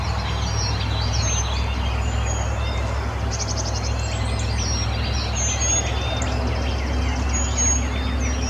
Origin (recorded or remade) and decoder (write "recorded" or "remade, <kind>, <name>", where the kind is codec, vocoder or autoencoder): recorded